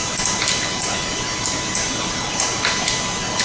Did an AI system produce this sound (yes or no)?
no